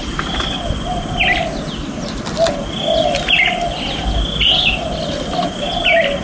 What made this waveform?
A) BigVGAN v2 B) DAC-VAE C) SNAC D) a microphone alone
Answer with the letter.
D